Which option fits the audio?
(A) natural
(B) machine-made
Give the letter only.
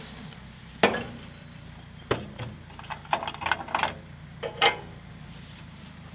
A